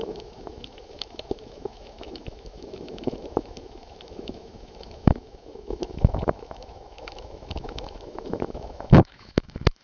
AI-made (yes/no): yes